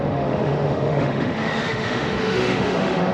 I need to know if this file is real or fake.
fake